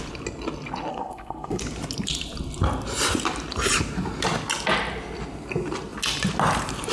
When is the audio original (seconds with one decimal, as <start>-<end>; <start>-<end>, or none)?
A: 0.0-0.9; 1.6-6.9